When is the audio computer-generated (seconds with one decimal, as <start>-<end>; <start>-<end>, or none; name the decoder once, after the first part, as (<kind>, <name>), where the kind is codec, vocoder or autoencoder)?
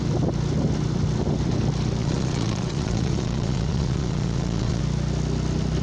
2.0-4.8 (vocoder, Vocos)